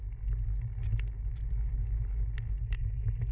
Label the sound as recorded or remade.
recorded